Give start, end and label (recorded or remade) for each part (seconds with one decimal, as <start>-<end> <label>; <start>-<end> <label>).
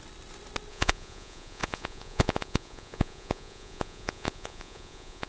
0.0-0.7 recorded; 0.7-5.3 remade